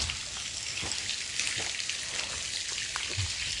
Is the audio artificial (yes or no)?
no